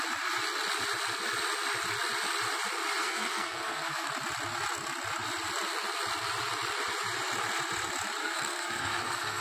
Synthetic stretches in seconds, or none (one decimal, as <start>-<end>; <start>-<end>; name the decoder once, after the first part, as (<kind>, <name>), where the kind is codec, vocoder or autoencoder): 3.0-4.1 (codec, SNAC); 8.2-9.4